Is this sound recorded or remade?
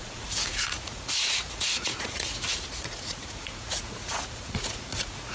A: remade